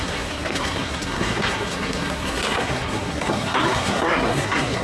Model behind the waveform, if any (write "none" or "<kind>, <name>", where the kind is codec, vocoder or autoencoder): codec, SNAC